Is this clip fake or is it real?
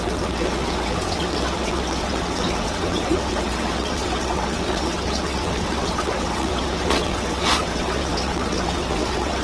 fake